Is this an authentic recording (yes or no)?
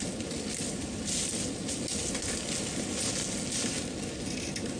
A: yes